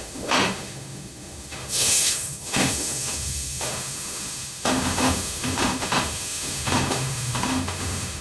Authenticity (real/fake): fake